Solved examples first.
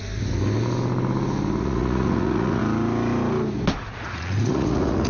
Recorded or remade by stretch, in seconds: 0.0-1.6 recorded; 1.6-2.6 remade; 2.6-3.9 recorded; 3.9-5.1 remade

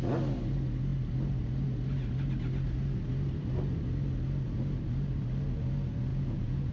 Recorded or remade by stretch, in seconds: 0.0-6.1 recorded; 6.1-6.7 remade

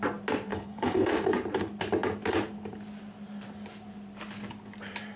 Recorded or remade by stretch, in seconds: 0.0-0.5 recorded; 0.5-1.1 remade; 1.1-5.2 recorded

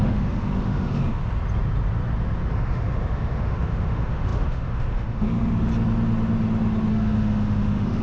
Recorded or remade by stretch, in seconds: 0.0-1.2 remade; 1.2-2.5 recorded; 2.5-5.7 remade; 5.7-6.9 recorded; 6.9-8.0 remade

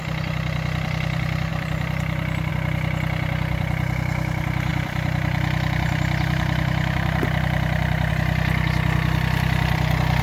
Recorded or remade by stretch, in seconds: 0.0-1.5 recorded; 1.5-2.5 remade; 2.5-4.7 recorded; 4.7-8.1 remade; 8.1-10.2 recorded

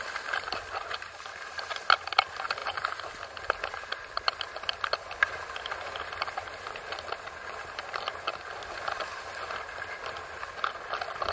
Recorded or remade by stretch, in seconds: 0.0-11.3 recorded